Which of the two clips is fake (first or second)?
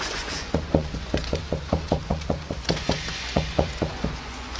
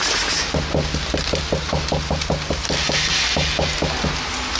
first